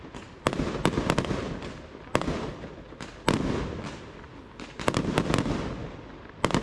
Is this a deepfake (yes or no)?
no